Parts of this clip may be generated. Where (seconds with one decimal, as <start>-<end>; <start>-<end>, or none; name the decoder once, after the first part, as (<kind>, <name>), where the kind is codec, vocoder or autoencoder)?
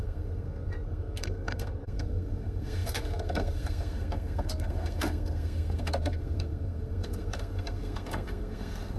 0.0-9.0 (codec, SNAC)